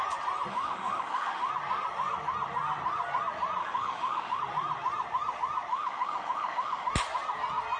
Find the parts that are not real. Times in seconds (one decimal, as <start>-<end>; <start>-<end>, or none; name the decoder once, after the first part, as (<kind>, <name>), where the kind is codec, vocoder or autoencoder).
0.5-1.5 (autoencoder, DAC-VAE); 3.6-4.4; 5.7-6.9